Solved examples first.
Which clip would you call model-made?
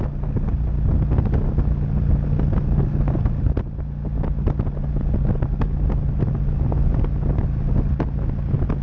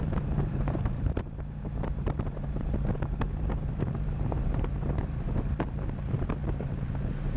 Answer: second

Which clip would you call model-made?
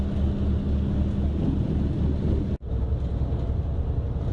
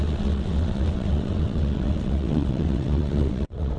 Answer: second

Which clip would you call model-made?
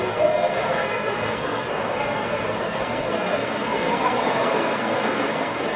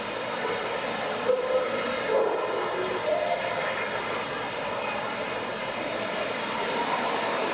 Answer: first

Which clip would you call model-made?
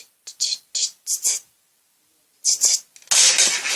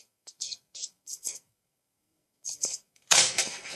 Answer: second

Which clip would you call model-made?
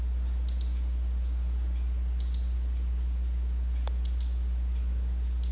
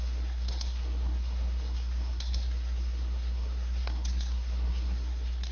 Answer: second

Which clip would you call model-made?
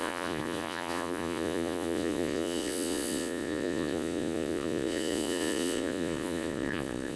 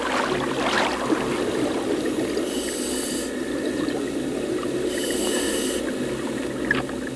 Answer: first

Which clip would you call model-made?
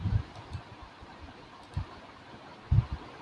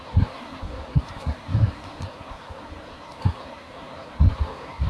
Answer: second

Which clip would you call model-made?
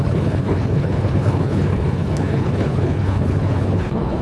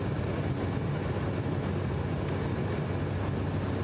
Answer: first